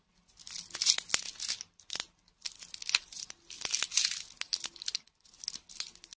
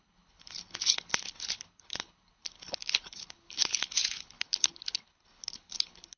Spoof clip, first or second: second